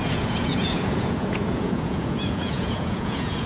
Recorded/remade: remade